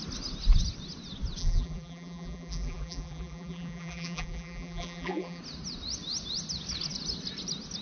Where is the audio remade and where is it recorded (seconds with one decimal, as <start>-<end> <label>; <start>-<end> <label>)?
0.0-1.4 recorded; 1.4-5.4 remade; 5.4-7.8 recorded